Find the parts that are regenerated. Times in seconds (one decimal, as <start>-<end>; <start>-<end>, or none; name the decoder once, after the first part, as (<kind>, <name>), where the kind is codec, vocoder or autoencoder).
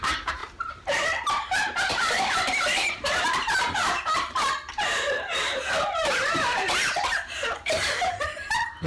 0.0-8.9 (vocoder, BigVGAN v2)